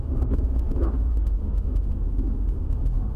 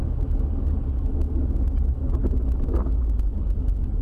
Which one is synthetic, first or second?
first